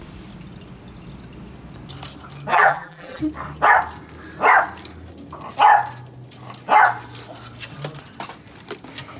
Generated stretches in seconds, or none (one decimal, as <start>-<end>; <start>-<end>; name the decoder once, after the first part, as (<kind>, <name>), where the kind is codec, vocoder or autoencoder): 2.5-3.2 (vocoder, BigVGAN v2)